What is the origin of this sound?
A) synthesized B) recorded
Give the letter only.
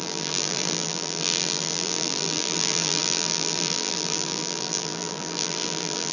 A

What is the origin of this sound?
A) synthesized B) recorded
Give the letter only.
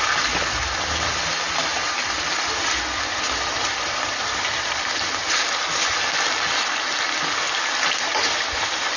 B